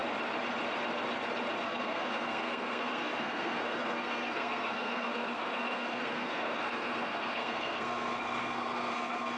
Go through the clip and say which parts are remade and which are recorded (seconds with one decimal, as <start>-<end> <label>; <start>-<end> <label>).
0.0-1.6 recorded; 1.6-9.4 remade